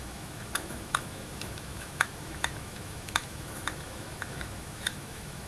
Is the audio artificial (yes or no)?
yes